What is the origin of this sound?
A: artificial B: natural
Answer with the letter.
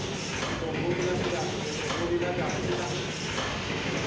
B